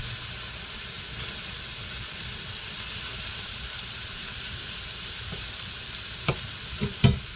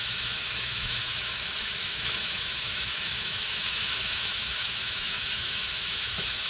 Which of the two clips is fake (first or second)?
second